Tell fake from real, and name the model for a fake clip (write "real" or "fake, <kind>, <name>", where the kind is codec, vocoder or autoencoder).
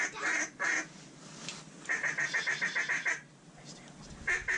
real